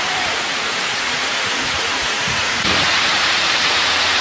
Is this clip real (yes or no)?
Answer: no